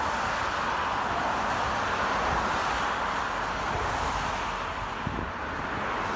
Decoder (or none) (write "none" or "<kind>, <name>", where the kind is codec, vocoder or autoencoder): none